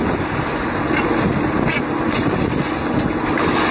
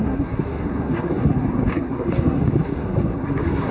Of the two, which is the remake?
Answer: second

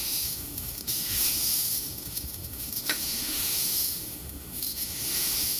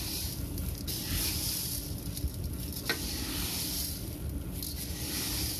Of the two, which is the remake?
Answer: first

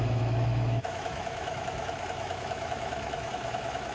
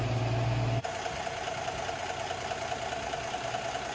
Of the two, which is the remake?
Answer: first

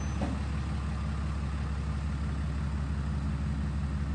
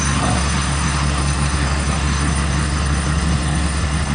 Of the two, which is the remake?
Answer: second